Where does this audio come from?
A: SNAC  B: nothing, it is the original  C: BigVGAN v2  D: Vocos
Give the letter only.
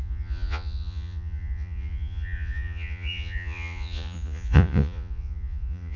D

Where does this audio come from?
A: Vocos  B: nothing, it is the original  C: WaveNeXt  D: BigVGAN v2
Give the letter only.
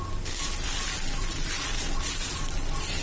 B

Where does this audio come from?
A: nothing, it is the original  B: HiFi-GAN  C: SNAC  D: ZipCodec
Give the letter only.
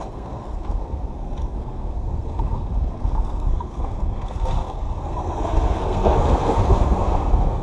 C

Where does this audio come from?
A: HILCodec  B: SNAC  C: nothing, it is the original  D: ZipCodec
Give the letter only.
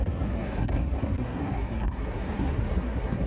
B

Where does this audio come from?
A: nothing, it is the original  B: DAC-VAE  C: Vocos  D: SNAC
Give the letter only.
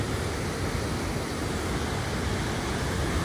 A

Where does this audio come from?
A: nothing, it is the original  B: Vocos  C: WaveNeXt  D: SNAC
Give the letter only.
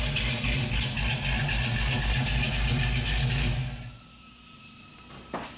A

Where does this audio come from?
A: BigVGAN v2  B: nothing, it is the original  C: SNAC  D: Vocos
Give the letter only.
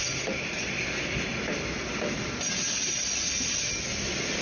B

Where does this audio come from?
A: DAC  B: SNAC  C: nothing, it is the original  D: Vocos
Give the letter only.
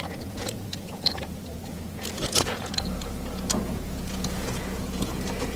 D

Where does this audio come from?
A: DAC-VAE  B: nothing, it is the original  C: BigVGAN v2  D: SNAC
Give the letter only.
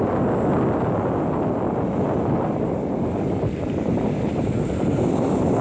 B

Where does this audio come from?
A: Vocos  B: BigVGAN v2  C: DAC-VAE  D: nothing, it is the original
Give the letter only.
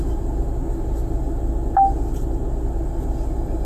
D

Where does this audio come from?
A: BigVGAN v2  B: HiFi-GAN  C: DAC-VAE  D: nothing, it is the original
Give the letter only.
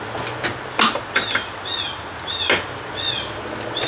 D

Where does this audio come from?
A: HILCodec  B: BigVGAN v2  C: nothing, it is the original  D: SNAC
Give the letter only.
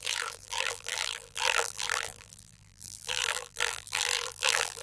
B